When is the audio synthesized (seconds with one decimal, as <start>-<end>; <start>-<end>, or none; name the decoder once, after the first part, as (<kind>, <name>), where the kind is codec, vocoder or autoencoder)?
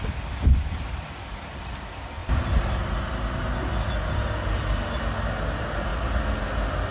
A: none